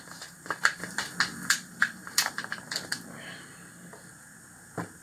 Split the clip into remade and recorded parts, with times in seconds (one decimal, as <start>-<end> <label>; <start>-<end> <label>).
0.0-0.8 remade; 0.8-1.5 recorded; 1.5-2.9 remade; 2.9-4.2 recorded; 4.2-5.0 remade